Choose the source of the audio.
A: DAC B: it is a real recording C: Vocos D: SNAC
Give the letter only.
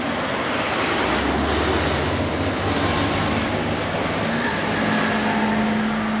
B